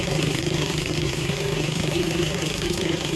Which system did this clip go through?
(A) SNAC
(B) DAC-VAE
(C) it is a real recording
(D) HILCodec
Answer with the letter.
A